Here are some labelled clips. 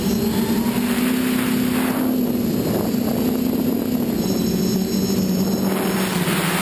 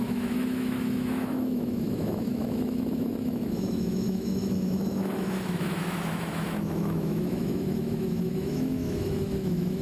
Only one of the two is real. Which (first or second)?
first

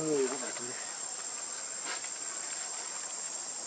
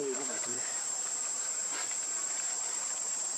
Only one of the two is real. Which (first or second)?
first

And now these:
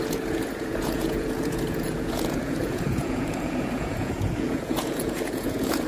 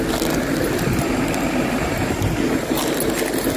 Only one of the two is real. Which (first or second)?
second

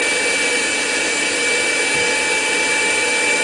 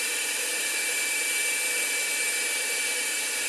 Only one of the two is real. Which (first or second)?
first